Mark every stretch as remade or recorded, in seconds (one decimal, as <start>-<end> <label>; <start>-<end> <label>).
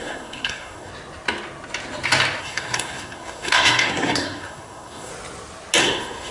0.0-0.9 remade; 0.9-2.4 recorded; 2.4-5.1 remade; 5.1-5.8 recorded; 5.8-6.3 remade